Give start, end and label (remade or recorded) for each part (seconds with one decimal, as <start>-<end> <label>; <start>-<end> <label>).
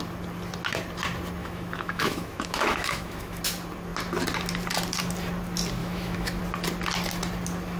0.0-1.4 recorded; 1.4-3.4 remade; 3.4-5.8 recorded; 5.8-6.4 remade; 6.4-7.8 recorded